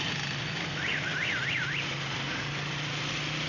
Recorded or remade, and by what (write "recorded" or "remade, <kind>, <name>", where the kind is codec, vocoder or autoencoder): recorded